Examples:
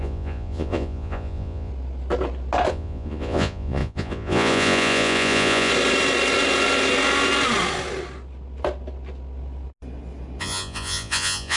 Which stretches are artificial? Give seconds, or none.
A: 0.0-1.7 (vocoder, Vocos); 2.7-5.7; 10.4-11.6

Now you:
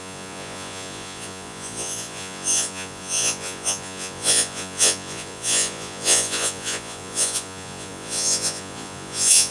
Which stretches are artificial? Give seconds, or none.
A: 0.0-9.5 (vocoder, Vocos)